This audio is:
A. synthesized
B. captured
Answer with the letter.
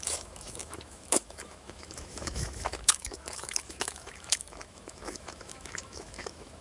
A